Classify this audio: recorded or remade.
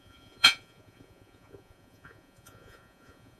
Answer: remade